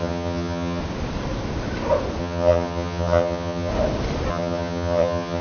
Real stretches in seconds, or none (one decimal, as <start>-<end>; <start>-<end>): 0.8-2.2; 3.7-4.3